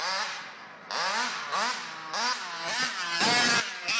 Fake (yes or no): no